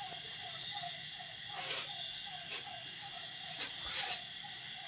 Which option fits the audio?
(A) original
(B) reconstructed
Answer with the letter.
A